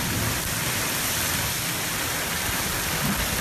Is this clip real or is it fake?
real